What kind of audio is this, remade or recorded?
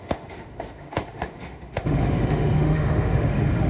remade